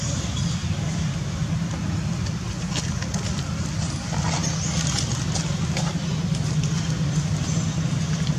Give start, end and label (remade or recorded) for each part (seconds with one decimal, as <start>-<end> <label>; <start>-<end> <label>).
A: 0.0-8.4 recorded

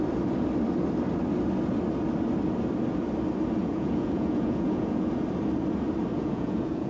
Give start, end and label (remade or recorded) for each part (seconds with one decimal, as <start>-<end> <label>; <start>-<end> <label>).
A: 0.0-3.6 recorded; 3.6-5.1 remade; 5.1-6.1 recorded; 6.1-6.9 remade

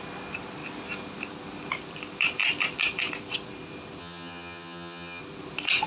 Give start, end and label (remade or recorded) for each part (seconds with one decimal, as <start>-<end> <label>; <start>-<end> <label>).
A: 0.0-4.0 recorded; 4.0-5.2 remade; 5.2-5.9 recorded

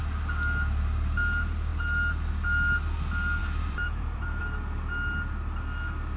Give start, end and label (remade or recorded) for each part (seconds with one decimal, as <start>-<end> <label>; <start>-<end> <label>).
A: 0.0-3.4 recorded; 3.4-4.4 remade; 4.4-6.2 recorded